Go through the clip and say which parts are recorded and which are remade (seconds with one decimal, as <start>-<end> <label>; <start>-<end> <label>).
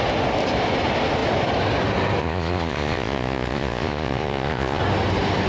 0.0-2.2 recorded; 2.2-4.8 remade; 4.8-5.5 recorded